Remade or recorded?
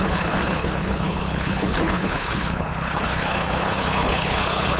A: remade